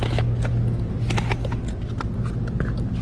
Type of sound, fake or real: real